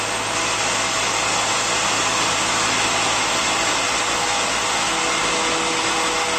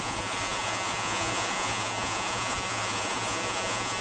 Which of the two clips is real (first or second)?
first